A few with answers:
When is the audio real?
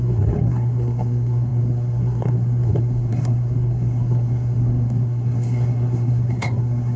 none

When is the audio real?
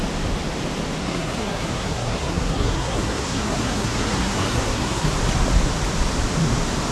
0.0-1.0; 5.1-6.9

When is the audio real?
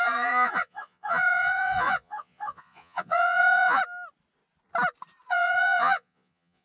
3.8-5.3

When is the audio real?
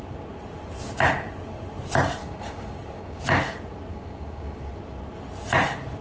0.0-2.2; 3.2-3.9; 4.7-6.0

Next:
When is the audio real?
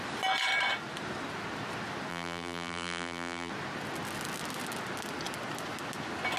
0.0-2.1; 3.5-6.4